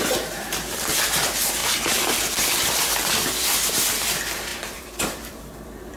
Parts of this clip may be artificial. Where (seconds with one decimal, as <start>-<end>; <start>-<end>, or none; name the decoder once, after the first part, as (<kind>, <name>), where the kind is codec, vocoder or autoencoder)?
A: 0.0-6.0 (vocoder, BigVGAN v2)